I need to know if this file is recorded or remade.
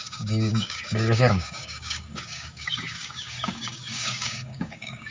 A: remade